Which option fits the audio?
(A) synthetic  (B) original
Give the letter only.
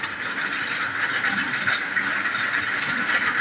A